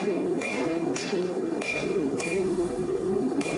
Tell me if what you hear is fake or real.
fake